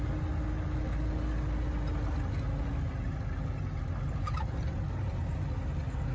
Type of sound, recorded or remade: recorded